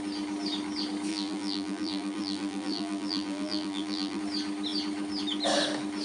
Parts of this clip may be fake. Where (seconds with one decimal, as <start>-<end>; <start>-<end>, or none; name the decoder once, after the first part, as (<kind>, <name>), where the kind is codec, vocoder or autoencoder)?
1.1-4.2 (vocoder, BigVGAN v2)

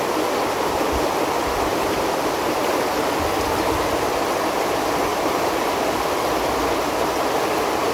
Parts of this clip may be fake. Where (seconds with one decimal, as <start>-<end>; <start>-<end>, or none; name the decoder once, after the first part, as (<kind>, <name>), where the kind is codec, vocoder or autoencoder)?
1.7-3.0 (vocoder, BigVGAN v2); 5.1-5.6